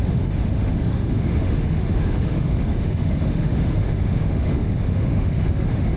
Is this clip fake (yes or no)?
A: yes